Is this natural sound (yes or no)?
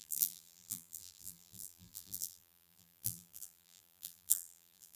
no